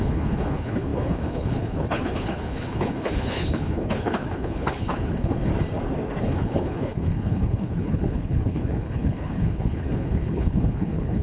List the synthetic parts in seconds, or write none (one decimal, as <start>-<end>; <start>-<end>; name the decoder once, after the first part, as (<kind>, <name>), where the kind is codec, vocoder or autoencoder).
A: 0.0-5.5 (codec, HILCodec); 6.2-11.2

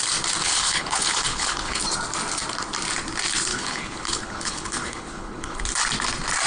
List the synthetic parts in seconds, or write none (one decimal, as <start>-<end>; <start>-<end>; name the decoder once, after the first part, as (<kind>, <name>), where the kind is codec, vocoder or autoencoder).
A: 0.4-1.8 (codec, HILCodec); 3.5-5.6

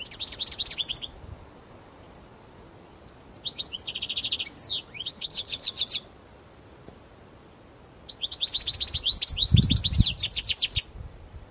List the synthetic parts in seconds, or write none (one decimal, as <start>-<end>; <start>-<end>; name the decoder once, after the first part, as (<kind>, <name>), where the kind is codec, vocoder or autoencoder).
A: 5.1-5.7 (codec, HILCodec)